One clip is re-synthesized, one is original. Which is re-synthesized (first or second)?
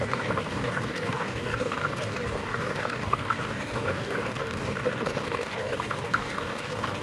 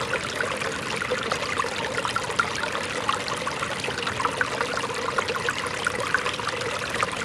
first